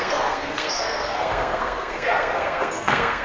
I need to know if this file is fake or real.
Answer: fake